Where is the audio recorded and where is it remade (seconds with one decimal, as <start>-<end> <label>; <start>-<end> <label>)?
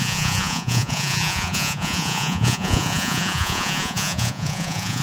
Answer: 0.0-5.0 remade